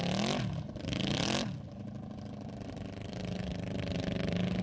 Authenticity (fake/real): real